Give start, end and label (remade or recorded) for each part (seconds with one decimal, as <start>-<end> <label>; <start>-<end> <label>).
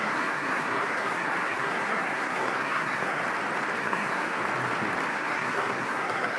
0.0-3.2 remade; 3.2-3.8 recorded; 3.8-4.4 remade; 4.4-5.1 recorded; 5.1-6.4 remade